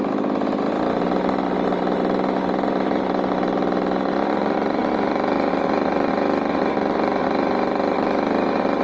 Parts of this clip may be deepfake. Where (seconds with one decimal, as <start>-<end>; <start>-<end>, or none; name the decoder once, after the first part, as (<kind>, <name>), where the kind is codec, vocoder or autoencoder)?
none